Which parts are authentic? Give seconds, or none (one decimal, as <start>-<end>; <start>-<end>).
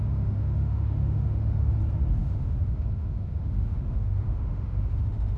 1.7-2.2